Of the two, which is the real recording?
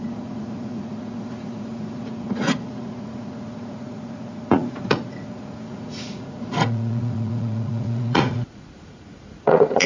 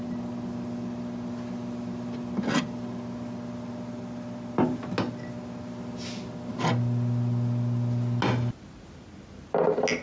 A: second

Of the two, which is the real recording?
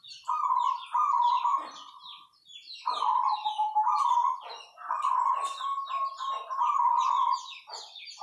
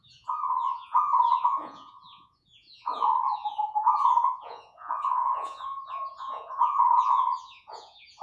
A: first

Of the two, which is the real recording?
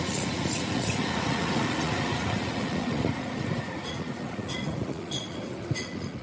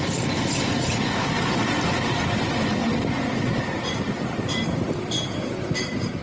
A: second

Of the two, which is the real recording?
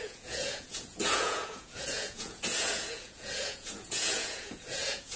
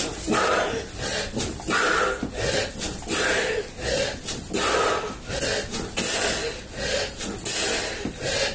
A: second